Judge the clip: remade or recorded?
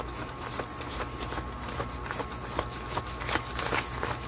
recorded